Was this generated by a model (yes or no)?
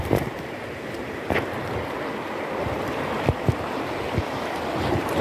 no